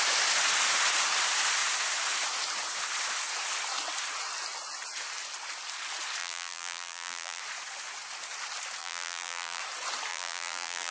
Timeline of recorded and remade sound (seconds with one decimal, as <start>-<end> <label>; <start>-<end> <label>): 0.0-6.2 recorded; 6.2-7.4 remade; 7.4-8.8 recorded; 8.8-9.6 remade; 9.6-10.1 recorded; 10.1-10.9 remade